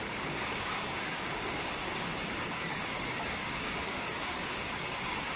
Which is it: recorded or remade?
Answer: remade